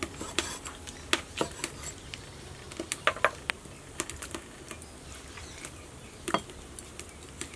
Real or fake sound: real